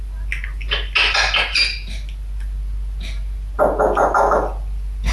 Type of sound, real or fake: real